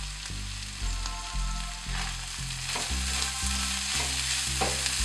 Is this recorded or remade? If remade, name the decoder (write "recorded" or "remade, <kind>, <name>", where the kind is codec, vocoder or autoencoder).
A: recorded